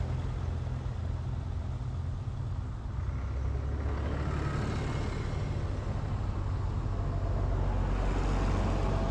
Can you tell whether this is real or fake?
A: real